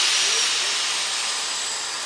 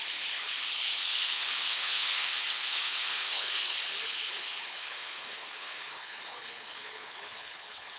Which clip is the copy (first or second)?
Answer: second